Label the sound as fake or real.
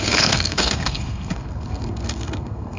fake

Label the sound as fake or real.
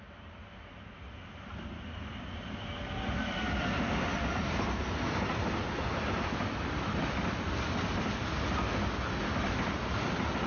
real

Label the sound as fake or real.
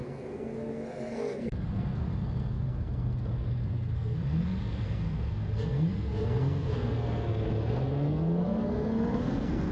fake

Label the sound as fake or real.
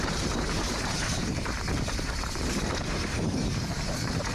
fake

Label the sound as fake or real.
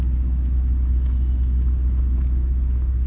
real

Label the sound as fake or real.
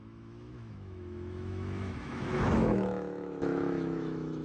fake